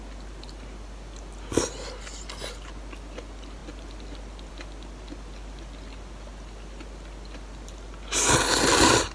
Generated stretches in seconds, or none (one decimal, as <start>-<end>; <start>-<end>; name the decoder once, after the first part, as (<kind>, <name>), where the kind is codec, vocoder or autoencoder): none